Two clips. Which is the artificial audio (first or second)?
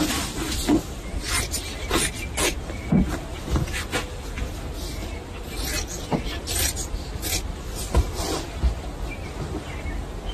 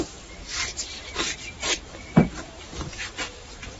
second